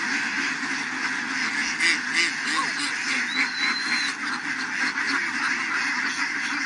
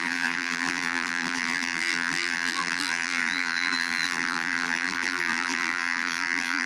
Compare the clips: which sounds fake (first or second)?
second